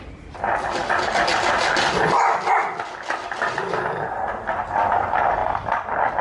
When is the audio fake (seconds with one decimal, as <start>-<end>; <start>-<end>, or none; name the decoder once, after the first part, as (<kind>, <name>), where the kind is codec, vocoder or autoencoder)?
none